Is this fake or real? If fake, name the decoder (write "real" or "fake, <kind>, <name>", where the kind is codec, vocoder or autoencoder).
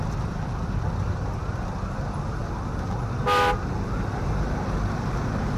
real